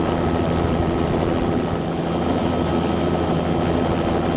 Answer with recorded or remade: recorded